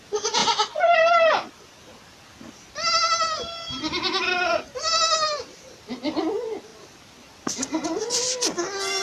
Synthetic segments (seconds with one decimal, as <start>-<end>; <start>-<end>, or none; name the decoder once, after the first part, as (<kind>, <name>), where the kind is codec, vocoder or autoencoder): none